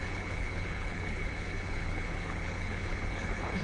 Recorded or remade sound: remade